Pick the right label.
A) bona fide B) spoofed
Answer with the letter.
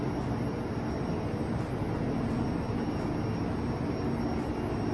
A